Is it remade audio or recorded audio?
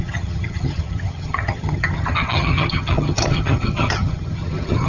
remade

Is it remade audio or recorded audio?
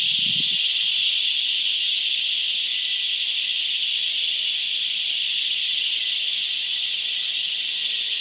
recorded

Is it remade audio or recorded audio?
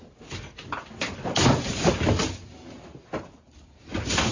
recorded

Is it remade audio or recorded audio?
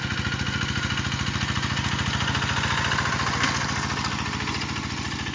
recorded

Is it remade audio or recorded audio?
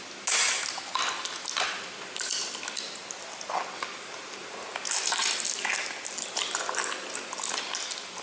recorded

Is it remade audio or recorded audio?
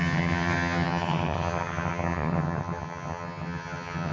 remade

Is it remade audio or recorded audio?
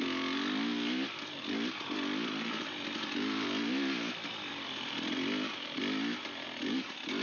recorded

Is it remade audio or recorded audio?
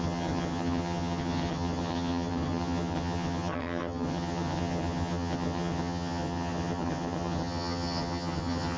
remade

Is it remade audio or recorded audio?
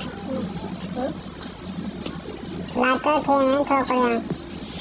recorded